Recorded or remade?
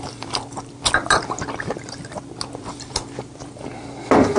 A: remade